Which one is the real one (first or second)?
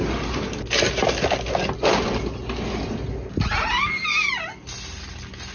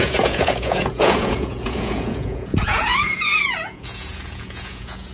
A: first